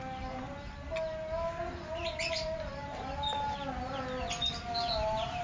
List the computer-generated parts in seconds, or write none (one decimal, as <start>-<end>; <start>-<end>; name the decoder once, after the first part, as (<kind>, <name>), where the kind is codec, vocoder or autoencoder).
none